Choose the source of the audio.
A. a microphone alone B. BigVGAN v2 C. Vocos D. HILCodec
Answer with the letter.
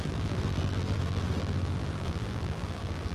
B